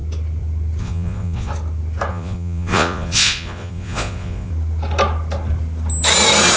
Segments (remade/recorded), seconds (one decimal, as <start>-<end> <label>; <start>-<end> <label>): 0.0-0.8 recorded; 0.8-1.5 remade; 1.5-2.1 recorded; 2.1-4.5 remade; 4.5-6.6 recorded